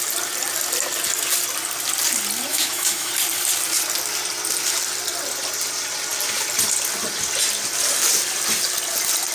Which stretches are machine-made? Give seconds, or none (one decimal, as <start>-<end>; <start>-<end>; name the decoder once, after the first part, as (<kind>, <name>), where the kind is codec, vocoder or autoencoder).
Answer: 2.5-3.1 (autoencoder, DAC-VAE)